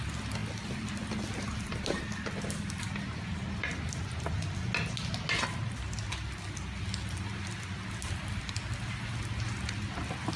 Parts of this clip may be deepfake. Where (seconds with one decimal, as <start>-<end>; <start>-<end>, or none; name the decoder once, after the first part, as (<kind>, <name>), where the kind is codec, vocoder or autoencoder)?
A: none